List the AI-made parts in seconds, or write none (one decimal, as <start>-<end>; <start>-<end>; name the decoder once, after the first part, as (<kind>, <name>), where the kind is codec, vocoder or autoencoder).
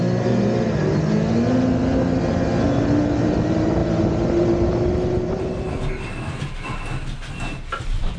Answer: none